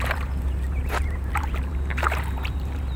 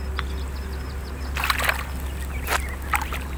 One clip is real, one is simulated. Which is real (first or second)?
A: second